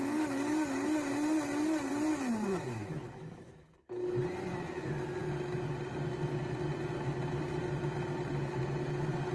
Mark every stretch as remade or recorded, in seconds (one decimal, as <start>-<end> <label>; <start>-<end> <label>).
0.0-2.5 recorded; 2.5-4.2 remade; 4.2-9.3 recorded